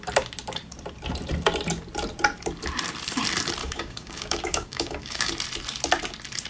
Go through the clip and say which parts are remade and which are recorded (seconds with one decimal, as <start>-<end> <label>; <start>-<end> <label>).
0.0-3.6 recorded; 3.6-5.3 remade; 5.3-6.5 recorded